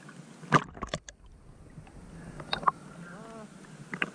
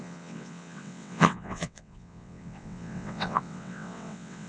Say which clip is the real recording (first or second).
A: first